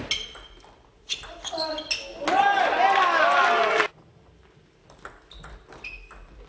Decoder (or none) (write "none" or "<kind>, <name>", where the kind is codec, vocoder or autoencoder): none